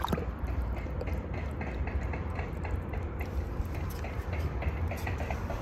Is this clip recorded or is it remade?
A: remade